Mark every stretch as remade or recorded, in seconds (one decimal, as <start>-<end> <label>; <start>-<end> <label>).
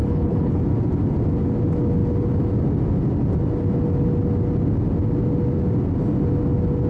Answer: 0.0-0.6 remade; 0.6-6.9 recorded